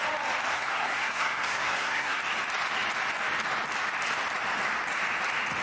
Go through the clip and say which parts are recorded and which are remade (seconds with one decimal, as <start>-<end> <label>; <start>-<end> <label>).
0.0-0.5 recorded; 0.5-2.2 remade; 2.2-5.6 recorded